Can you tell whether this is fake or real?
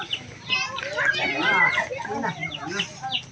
real